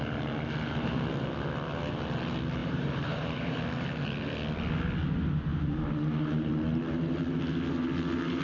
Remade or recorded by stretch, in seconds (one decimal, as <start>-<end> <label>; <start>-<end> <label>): 0.0-2.6 recorded; 2.6-3.6 remade; 3.6-5.5 recorded; 5.5-6.8 remade; 6.8-8.4 recorded